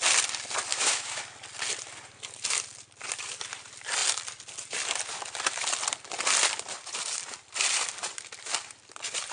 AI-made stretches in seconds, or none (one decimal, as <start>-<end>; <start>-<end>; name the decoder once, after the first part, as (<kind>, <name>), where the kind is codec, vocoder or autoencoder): 0.7-1.2 (autoencoder, DAC-VAE)